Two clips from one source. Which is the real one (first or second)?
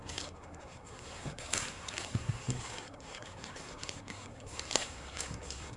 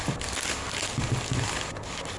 second